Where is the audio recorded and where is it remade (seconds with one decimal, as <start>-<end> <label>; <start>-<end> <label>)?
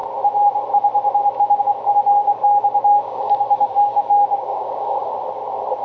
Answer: 0.0-2.1 recorded; 2.1-5.1 remade; 5.1-5.8 recorded